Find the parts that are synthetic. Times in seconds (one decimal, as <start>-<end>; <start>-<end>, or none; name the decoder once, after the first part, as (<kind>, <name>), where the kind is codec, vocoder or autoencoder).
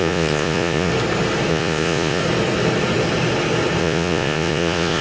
0.0-0.9 (vocoder, Vocos); 1.5-2.2; 3.8-5.0